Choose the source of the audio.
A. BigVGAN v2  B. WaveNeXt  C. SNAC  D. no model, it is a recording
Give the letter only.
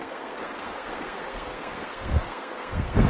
C